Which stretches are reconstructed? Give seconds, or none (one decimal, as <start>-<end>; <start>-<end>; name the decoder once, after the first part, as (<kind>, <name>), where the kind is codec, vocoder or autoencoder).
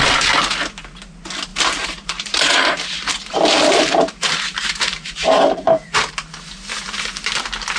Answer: 1.5-6.1 (vocoder, BigVGAN v2)